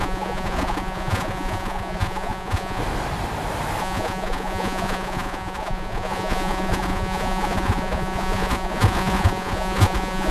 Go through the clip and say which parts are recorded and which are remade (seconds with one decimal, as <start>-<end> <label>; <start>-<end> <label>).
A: 0.0-2.8 remade; 2.8-3.8 recorded; 3.8-10.3 remade